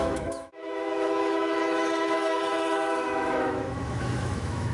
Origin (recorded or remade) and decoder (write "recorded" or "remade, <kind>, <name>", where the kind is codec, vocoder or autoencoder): remade, autoencoder, DAC-VAE